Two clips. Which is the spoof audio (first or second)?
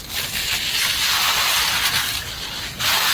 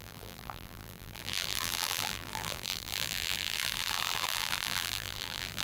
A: second